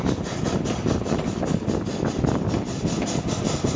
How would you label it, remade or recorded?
recorded